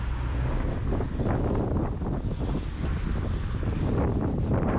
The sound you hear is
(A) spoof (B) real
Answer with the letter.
B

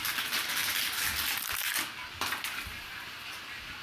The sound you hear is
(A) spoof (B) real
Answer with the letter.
B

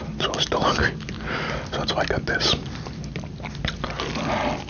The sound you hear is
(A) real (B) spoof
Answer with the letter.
A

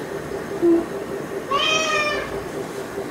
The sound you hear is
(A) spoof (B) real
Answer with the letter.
B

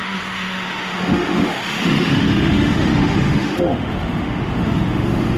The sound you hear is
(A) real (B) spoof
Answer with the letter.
B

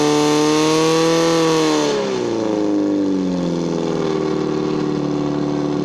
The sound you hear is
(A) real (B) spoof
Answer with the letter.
A